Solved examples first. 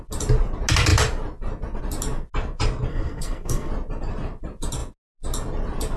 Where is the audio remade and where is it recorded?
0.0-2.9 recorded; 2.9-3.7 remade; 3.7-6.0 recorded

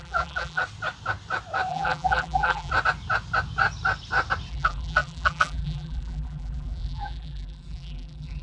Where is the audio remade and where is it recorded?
0.0-0.6 remade; 0.6-1.7 recorded; 1.7-2.7 remade; 2.7-4.5 recorded; 4.5-8.4 remade

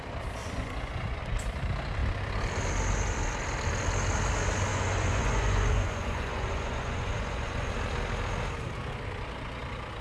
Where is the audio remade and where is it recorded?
0.0-0.4 recorded; 0.4-1.2 remade; 1.2-4.7 recorded; 4.7-7.7 remade; 7.7-10.0 recorded

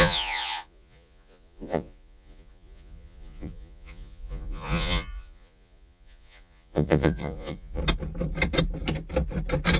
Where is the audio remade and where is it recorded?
0.0-7.8 remade; 7.8-9.8 recorded

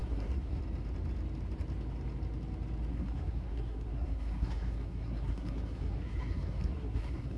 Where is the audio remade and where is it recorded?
0.0-0.6 remade; 0.6-2.9 recorded; 2.9-7.4 remade